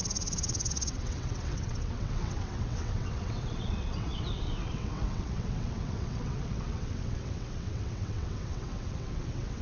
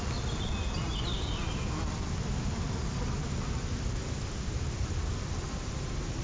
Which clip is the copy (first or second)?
first